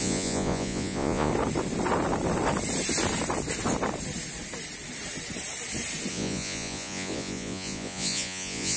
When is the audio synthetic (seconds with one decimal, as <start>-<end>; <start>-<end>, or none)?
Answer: 0.0-1.3; 6.1-8.8